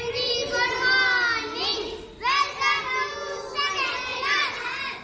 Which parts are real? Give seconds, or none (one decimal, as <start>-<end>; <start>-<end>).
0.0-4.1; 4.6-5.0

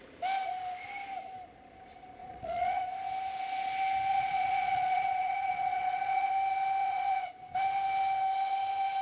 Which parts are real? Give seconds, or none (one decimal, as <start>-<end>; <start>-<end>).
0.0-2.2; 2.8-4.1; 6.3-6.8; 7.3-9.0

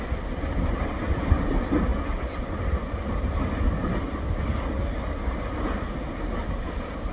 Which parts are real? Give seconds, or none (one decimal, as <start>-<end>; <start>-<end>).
0.0-7.1

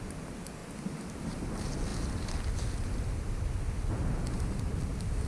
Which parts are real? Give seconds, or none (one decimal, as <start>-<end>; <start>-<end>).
0.0-5.3

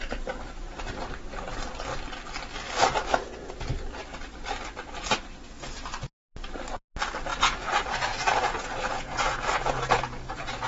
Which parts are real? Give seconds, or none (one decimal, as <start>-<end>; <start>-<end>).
0.0-7.3

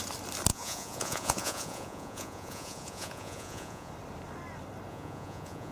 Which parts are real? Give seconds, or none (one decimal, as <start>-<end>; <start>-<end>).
0.0-0.5; 3.9-4.9

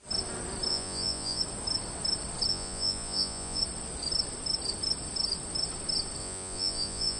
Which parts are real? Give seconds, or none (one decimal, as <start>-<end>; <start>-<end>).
0.0-0.7; 1.4-2.5; 3.6-6.2